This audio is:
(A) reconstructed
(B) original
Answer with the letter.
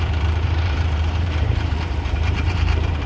A